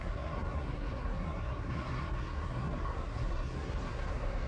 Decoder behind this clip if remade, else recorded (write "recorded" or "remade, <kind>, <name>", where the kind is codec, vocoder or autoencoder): remade, codec, SNAC